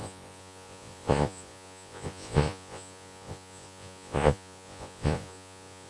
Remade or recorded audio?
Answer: remade